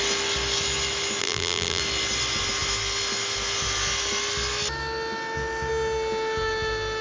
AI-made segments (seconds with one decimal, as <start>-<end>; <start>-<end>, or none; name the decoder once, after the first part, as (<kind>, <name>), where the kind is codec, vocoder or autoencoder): 1.2-1.8 (vocoder, BigVGAN v2)